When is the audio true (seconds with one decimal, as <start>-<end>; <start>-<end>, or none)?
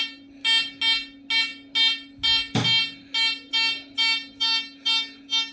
0.0-5.5